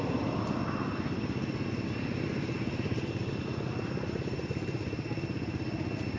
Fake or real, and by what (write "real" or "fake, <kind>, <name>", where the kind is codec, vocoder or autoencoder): real